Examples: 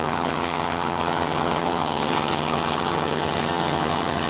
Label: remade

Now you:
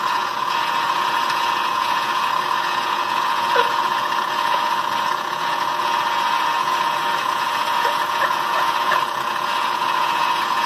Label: remade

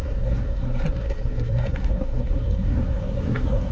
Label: remade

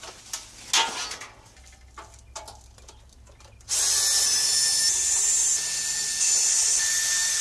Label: recorded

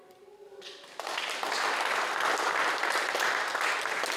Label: recorded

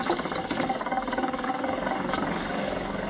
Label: remade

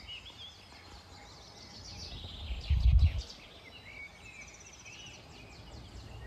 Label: recorded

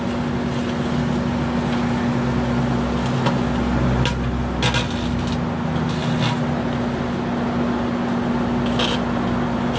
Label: recorded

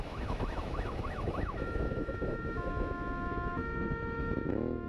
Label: remade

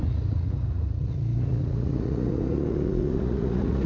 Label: remade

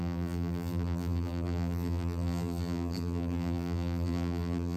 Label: remade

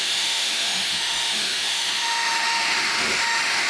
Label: remade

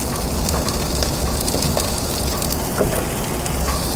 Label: recorded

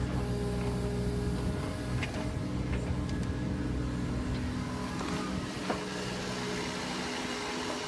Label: recorded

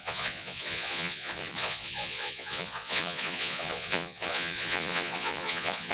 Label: remade